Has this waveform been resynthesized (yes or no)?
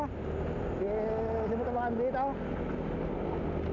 no